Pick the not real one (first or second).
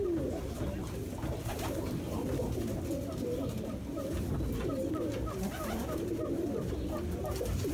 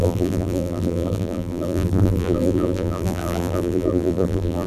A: second